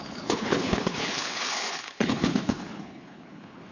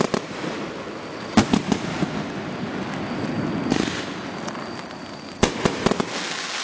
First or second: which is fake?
first